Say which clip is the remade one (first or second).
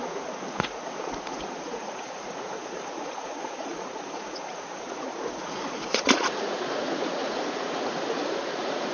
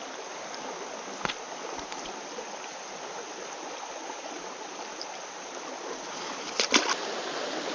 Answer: first